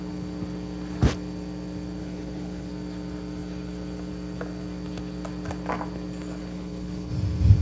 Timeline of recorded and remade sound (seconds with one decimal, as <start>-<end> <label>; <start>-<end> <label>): 0.0-2.0 recorded; 2.0-2.7 remade; 2.7-6.4 recorded; 6.4-7.1 remade; 7.1-7.6 recorded